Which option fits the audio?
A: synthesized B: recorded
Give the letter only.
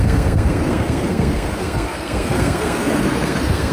A